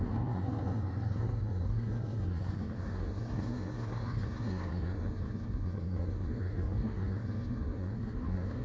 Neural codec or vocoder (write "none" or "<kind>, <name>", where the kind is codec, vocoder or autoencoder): codec, SNAC